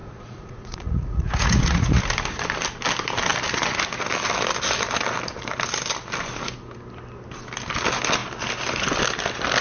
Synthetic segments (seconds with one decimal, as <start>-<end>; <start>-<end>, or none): 0.0-2.0